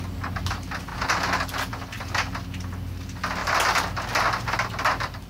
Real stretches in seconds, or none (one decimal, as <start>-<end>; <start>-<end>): 0.0-5.3